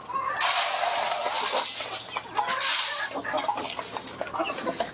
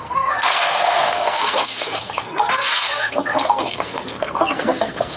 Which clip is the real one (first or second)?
first